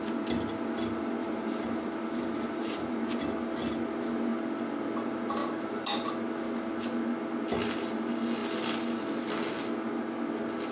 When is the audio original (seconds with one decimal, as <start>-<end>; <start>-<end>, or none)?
0.0-1.2; 3.2-5.4; 6.1-10.7